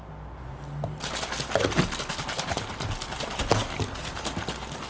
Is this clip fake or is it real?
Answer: real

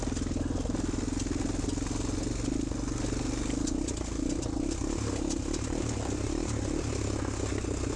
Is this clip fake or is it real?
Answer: real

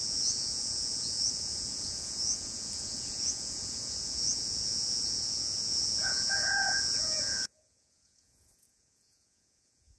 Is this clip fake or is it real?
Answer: fake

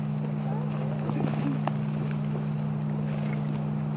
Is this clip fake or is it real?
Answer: real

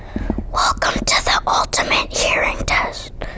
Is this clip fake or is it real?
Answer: real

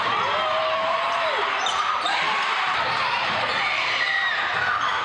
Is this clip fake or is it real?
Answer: fake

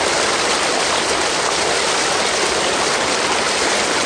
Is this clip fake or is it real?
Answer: real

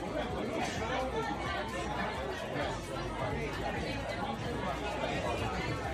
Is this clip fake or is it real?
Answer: real